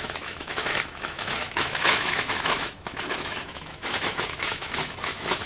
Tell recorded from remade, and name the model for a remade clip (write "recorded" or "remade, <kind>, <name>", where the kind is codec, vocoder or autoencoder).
remade, autoencoder, DAC-VAE